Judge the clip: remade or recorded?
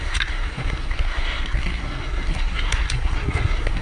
remade